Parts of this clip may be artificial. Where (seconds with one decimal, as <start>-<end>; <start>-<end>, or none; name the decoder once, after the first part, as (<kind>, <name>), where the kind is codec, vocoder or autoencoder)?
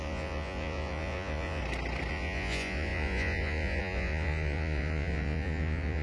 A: 0.0-1.6 (vocoder, Vocos); 2.1-6.0